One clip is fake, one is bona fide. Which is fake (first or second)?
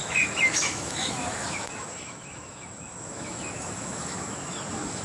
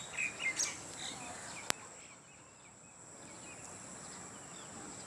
first